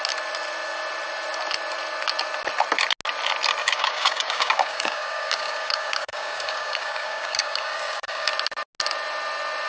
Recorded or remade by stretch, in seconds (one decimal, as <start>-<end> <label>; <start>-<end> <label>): 0.0-3.6 recorded; 3.6-8.3 remade; 8.3-9.7 recorded